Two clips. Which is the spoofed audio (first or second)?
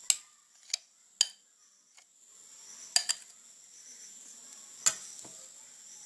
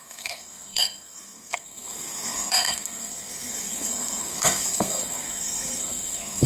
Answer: second